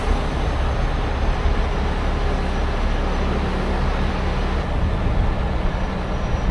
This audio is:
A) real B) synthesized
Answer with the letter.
A